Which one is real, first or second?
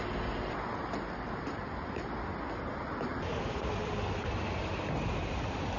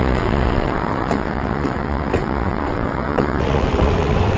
first